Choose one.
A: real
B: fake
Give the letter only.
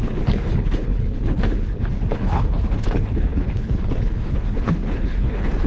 B